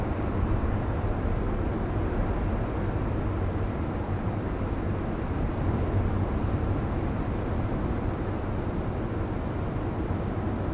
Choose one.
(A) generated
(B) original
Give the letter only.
B